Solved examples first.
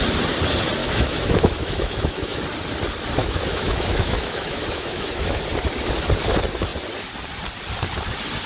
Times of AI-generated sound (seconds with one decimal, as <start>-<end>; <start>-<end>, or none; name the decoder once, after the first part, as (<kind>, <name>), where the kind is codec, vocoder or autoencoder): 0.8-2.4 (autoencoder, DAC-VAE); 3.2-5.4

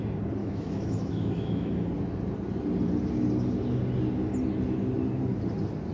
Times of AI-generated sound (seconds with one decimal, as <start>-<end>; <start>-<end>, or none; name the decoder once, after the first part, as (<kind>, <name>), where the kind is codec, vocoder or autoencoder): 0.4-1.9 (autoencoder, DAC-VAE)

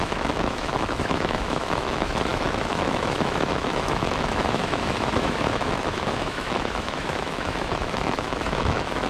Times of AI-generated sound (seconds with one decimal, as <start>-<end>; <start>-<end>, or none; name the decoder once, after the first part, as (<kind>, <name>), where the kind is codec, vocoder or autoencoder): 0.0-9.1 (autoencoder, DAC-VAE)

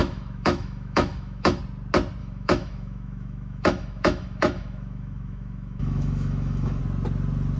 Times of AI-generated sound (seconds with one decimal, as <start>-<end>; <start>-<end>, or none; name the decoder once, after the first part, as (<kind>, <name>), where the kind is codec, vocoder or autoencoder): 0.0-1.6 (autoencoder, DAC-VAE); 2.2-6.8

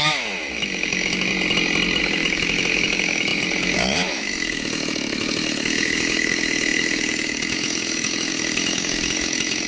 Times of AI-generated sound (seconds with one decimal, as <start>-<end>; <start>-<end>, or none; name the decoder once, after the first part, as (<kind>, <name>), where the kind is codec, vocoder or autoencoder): 0.0-1.3 (autoencoder, DAC-VAE); 2.0-9.7

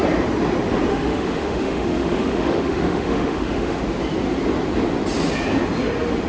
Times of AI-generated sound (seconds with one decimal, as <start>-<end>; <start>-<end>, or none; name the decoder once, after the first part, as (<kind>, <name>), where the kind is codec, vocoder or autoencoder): 0.9-3.8 (autoencoder, DAC-VAE)

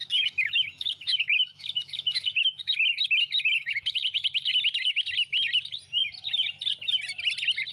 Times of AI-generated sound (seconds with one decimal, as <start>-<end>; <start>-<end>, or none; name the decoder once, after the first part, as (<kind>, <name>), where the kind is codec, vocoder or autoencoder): 0.0-4.5 (autoencoder, DAC-VAE)